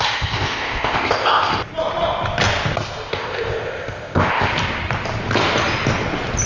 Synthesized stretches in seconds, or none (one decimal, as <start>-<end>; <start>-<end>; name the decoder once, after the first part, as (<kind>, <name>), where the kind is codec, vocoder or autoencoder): 0.0-1.5 (codec, ZipCodec); 3.1-4.5